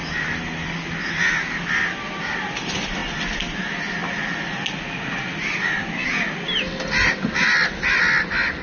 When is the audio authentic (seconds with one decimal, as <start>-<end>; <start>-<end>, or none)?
0.0-8.6